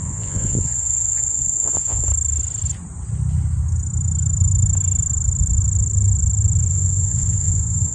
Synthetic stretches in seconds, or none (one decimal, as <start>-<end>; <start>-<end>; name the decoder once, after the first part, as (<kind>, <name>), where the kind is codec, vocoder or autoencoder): 0.0-2.1 (vocoder, Vocos); 6.7-7.9